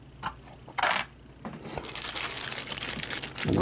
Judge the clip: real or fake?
real